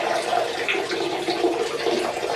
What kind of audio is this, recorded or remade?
recorded